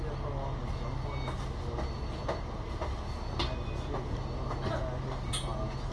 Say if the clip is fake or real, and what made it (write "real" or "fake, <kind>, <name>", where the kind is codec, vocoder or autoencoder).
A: real